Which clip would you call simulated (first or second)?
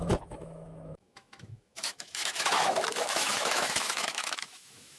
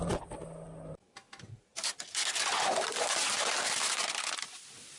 first